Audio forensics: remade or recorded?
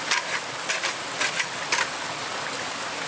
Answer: recorded